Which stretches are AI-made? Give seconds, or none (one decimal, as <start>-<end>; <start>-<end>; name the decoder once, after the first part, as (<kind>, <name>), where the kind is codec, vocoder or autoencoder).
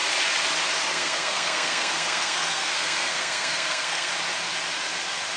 0.9-4.1 (codec, SNAC)